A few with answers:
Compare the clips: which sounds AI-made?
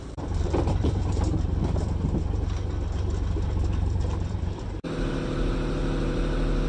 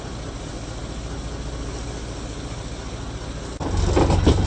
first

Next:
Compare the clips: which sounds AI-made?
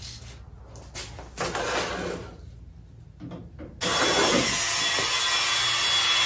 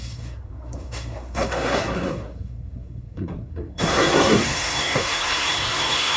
second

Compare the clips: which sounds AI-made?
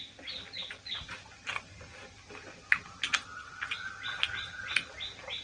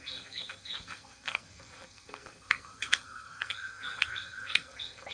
second